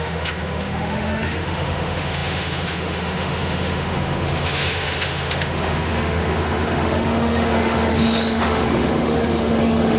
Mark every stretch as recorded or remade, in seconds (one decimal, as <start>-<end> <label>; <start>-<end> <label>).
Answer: 0.0-10.0 remade

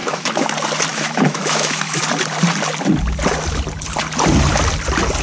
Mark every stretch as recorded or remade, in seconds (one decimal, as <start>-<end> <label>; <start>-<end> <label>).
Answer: 0.0-0.5 remade; 0.5-0.9 recorded; 0.9-2.0 remade; 2.0-5.2 recorded

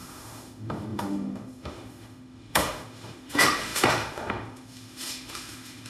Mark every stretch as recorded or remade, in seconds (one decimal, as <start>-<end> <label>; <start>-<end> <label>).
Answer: 0.0-5.9 remade

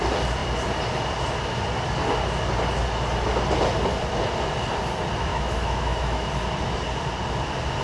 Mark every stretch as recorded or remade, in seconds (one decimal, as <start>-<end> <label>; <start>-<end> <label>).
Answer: 0.0-5.3 recorded; 5.3-6.3 remade; 6.3-7.8 recorded

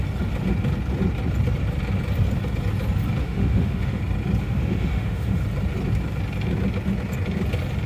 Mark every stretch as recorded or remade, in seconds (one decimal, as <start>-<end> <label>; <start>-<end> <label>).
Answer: 0.0-3.2 recorded; 3.2-4.0 remade; 4.0-4.4 recorded; 4.4-5.4 remade; 5.4-7.9 recorded

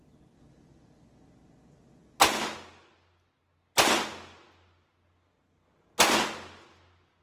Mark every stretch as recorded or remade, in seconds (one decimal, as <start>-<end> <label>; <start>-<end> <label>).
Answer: 0.0-7.2 recorded

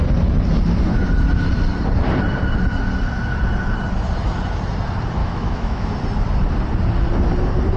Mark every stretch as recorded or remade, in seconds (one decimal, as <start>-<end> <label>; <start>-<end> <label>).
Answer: 0.0-5.2 recorded; 5.2-5.9 remade; 5.9-7.8 recorded